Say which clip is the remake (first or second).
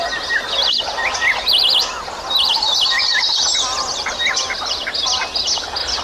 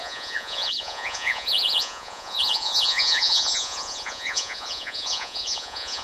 second